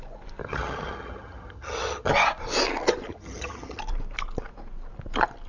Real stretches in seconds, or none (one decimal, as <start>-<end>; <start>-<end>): 0.0-0.4; 2.1-3.1; 3.8-5.5